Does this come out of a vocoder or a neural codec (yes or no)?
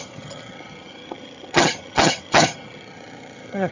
yes